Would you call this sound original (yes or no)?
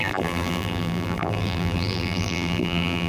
no